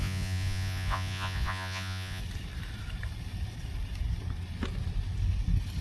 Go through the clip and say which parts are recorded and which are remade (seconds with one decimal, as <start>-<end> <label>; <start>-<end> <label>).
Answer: 0.0-2.2 remade; 2.2-5.8 recorded

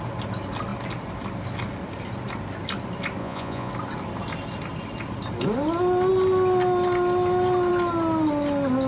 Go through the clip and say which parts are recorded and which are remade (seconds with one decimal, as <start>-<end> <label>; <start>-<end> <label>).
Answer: 0.0-3.2 recorded; 3.2-3.7 remade; 3.7-8.9 recorded

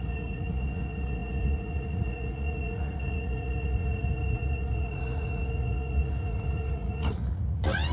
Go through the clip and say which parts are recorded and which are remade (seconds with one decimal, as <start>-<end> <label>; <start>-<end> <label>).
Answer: 0.0-7.9 remade

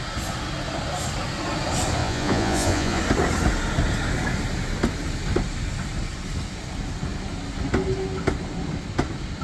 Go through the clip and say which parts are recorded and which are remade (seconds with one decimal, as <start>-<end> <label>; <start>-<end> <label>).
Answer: 0.0-2.0 recorded; 2.0-3.0 remade; 3.0-9.4 recorded

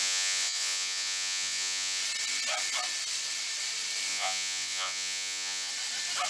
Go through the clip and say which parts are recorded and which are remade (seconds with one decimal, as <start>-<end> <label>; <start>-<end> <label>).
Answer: 0.0-2.0 remade; 2.0-4.1 recorded; 4.1-5.7 remade; 5.7-6.3 recorded

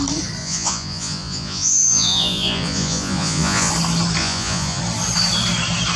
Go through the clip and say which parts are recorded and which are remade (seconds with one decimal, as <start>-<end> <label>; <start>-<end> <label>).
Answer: 0.0-0.4 recorded; 0.4-3.7 remade; 3.7-4.2 recorded; 4.2-4.8 remade; 4.8-6.0 recorded

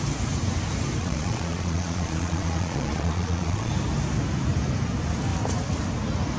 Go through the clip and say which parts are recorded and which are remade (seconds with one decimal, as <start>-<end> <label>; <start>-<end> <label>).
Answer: 0.0-1.0 recorded; 1.0-3.7 remade; 3.7-6.4 recorded

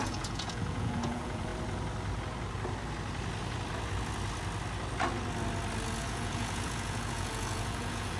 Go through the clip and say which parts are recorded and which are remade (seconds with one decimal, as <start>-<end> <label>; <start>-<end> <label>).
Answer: 0.0-1.5 remade; 1.5-6.0 recorded; 6.0-8.2 remade